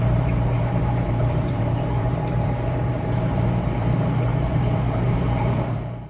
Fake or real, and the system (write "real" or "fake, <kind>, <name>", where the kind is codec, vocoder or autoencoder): fake, vocoder, BigVGAN v2